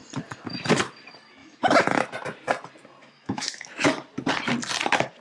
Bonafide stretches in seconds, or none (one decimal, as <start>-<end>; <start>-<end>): 0.0-1.4; 2.1-3.0; 3.9-5.2